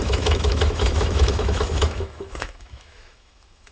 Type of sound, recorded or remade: remade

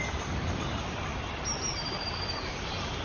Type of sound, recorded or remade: recorded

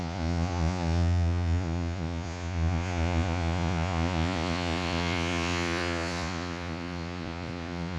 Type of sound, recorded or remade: remade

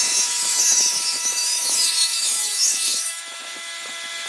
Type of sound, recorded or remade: remade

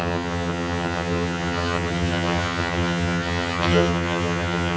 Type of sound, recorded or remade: remade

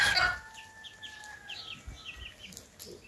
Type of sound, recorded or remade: recorded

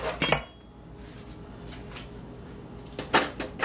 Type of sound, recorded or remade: recorded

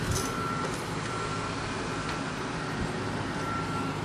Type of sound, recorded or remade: recorded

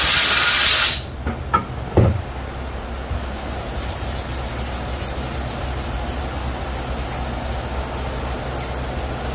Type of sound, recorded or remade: recorded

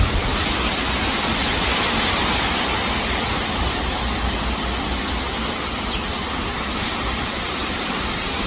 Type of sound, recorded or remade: recorded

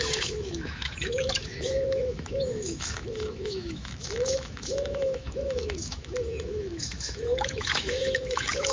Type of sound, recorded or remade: remade